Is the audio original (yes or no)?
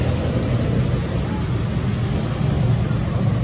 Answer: yes